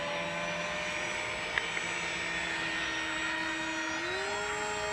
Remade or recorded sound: recorded